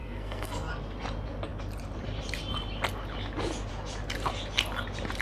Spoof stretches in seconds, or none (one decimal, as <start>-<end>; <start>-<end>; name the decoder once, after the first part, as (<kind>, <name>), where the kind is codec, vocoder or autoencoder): 0.0-0.7 (codec, SNAC)